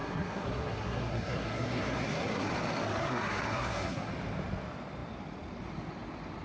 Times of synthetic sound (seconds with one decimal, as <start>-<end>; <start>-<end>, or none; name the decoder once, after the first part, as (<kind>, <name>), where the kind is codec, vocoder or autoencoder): 0.0-2.5 (codec, SNAC); 3.0-4.1